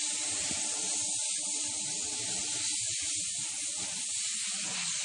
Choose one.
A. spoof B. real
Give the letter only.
B